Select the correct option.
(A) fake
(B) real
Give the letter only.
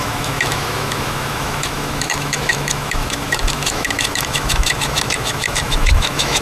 A